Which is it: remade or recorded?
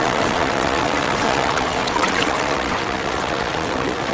remade